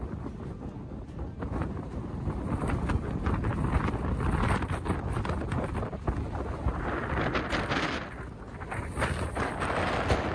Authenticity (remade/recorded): recorded